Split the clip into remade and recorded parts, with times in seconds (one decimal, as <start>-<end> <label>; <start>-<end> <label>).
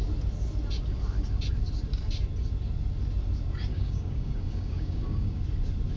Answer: 0.0-3.7 recorded; 3.7-5.4 remade; 5.4-6.0 recorded